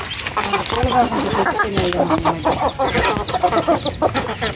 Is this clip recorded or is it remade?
recorded